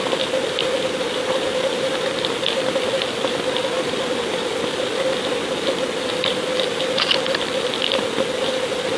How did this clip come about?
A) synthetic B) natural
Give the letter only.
B